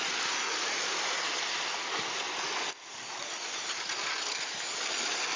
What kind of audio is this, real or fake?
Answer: real